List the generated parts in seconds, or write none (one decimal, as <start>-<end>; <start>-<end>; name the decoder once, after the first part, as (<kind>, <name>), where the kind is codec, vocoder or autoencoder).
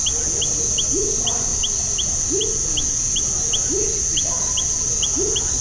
none